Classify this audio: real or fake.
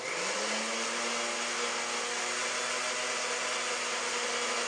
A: real